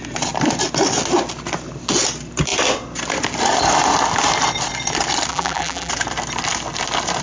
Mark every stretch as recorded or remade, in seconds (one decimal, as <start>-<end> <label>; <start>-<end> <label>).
0.0-5.3 recorded; 5.3-5.9 remade; 5.9-7.2 recorded